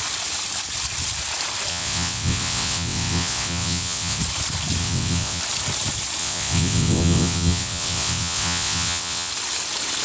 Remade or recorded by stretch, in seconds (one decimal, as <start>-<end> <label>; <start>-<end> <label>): 0.0-1.7 recorded; 1.7-4.2 remade; 4.2-4.8 recorded; 4.8-5.4 remade; 5.4-6.2 recorded; 6.2-9.3 remade; 9.3-10.0 recorded